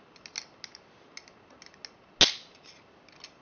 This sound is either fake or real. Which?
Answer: real